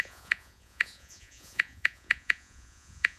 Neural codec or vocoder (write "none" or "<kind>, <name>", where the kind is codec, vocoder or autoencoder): vocoder, Vocos